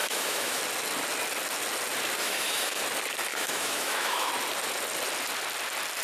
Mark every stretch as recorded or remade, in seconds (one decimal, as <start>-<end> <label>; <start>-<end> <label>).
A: 0.0-0.6 remade; 0.6-2.2 recorded; 2.2-2.8 remade; 2.8-3.3 recorded; 3.3-4.3 remade; 4.3-6.0 recorded